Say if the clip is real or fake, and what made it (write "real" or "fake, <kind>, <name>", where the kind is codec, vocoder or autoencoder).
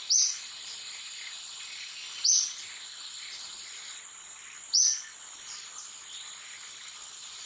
real